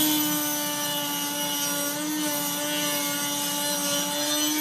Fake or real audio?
real